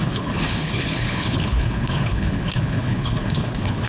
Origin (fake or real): fake